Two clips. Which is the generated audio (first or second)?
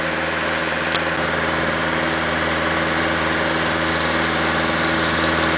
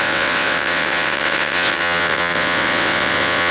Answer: second